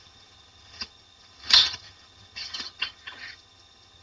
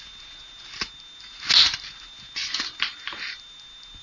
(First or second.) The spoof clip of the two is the first